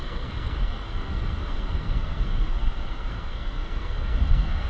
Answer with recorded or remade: remade